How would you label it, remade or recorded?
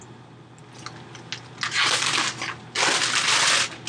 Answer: recorded